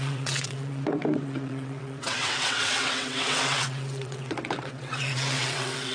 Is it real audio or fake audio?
fake